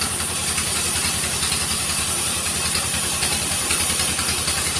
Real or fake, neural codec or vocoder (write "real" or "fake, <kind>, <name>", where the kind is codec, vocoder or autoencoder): fake, vocoder, BigVGAN v2